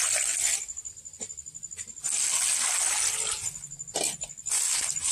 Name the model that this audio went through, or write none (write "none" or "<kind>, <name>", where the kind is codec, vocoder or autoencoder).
none